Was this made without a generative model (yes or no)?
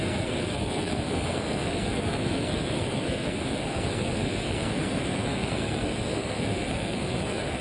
no